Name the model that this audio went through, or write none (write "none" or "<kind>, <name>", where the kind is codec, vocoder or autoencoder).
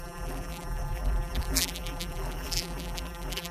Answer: vocoder, BigVGAN v2